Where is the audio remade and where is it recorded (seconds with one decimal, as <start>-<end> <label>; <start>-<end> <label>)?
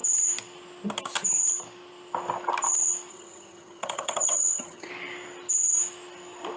0.0-3.1 recorded; 3.1-4.9 remade; 4.9-6.6 recorded